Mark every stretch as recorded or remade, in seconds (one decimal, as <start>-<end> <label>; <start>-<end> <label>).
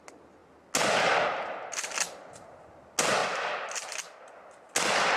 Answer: 0.0-5.2 recorded